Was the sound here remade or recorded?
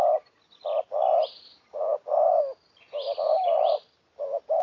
recorded